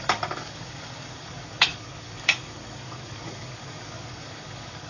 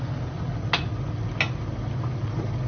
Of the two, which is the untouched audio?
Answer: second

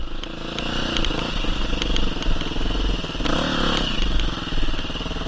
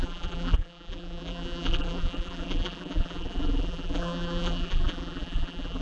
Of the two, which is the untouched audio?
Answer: first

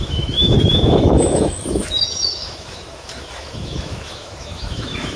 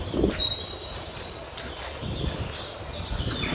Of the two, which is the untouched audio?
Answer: second